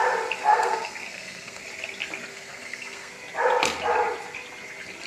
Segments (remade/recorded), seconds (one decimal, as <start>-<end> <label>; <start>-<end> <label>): 0.0-0.5 recorded; 0.5-1.6 remade; 1.6-2.3 recorded; 2.3-3.1 remade; 3.1-5.1 recorded